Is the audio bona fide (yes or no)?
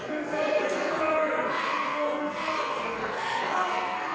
no